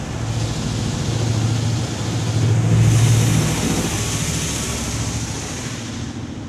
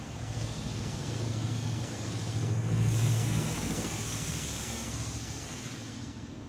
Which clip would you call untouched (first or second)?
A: first